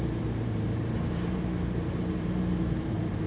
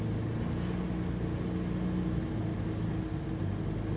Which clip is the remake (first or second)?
first